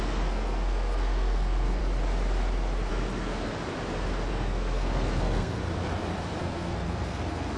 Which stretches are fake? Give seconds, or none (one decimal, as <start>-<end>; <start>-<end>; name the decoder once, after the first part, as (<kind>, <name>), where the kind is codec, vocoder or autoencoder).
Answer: 0.0-1.8 (codec, SNAC); 2.9-3.5; 4.3-5.6; 6.4-7.6